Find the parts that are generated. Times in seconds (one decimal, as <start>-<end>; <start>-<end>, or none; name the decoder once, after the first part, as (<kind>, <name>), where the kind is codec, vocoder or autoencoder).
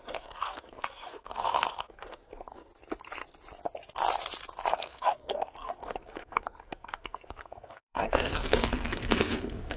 0.0-2.7 (codec, SNAC); 4.7-9.8